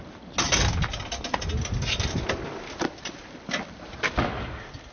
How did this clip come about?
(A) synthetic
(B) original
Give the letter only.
B